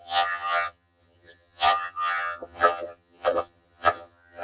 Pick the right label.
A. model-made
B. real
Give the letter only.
A